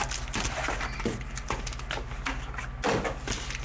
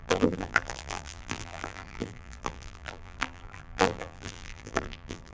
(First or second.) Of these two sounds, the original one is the first